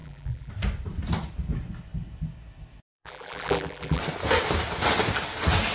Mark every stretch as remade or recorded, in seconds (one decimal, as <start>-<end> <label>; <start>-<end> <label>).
0.0-0.5 remade; 0.5-2.9 recorded; 2.9-4.0 remade; 4.0-5.7 recorded